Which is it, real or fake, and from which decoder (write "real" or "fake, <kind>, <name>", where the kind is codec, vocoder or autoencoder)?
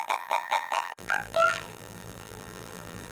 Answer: fake, vocoder, BigVGAN v2